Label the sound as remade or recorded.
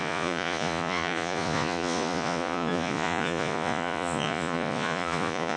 remade